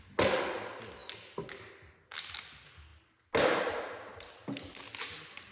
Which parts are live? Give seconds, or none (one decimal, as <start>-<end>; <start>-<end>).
0.0-5.5